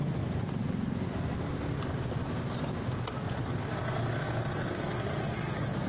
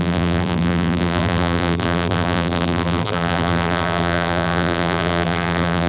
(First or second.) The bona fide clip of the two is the first